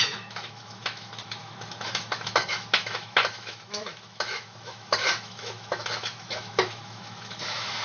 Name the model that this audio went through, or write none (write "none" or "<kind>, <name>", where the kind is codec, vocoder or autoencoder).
autoencoder, DAC-VAE